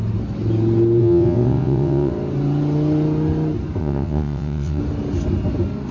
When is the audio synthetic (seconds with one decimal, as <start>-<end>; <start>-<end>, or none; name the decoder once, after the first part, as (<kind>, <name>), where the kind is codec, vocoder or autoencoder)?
1.0-2.1 (vocoder, WaveNeXt); 3.8-4.8